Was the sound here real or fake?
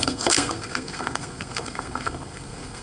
fake